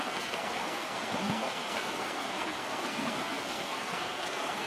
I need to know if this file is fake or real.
fake